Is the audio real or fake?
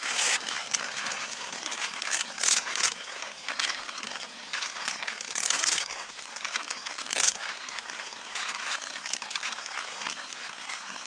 fake